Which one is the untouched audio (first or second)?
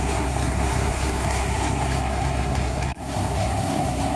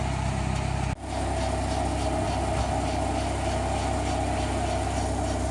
second